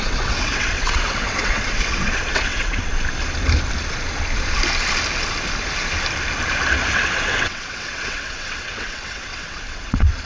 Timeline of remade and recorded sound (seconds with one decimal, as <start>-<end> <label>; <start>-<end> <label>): 0.0-2.9 remade; 2.9-6.7 recorded; 6.7-10.3 remade